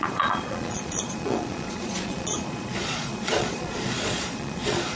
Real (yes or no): no